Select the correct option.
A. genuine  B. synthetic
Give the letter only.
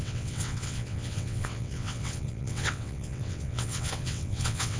B